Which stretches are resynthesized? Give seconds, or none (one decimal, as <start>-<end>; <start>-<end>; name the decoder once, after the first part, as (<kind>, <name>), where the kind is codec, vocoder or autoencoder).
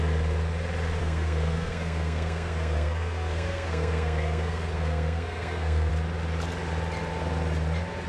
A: 1.0-5.9 (codec, SNAC)